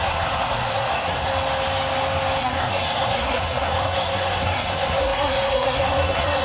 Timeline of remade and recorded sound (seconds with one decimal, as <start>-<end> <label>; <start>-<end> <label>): 0.0-1.3 remade; 1.3-2.4 recorded; 2.4-6.4 remade